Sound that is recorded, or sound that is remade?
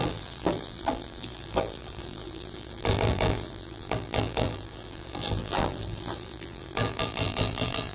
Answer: remade